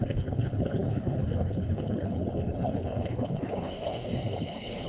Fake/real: fake